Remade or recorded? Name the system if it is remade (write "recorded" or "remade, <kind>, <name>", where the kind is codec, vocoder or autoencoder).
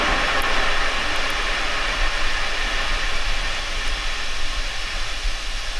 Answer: recorded